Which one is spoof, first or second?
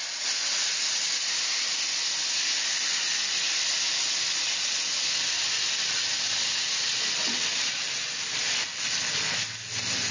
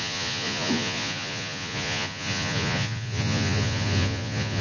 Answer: second